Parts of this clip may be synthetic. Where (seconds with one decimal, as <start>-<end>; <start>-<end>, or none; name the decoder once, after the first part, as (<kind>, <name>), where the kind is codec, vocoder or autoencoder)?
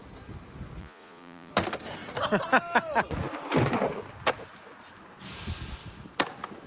0.8-1.5 (vocoder, Vocos)